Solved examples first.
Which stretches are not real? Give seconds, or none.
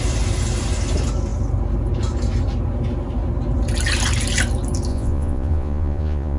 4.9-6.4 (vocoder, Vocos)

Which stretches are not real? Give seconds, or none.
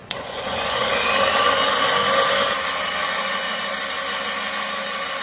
0.0-0.9 (vocoder, Vocos); 3.0-3.7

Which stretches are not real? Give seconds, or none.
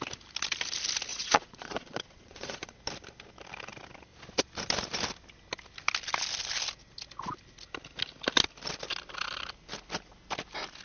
1.1-2.8 (vocoder, Vocos)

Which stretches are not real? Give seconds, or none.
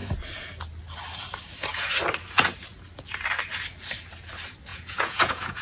4.7-5.6 (vocoder, Vocos)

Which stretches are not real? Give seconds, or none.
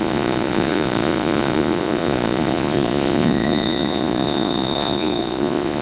0.0-5.8 (vocoder, Vocos)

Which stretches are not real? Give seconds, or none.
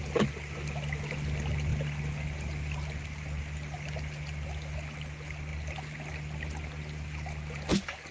none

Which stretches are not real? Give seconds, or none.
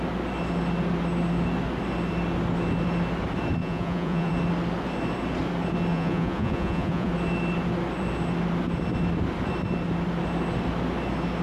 3.6-4.3 (vocoder, Vocos); 5.9-7.1